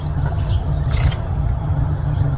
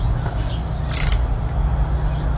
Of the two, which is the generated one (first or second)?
first